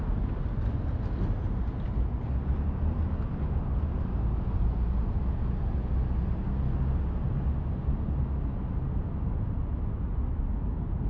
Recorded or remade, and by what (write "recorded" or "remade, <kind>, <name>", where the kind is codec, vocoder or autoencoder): recorded